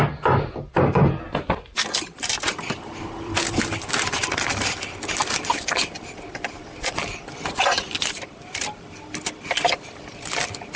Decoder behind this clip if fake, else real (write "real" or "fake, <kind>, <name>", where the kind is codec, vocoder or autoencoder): fake, vocoder, BigVGAN v2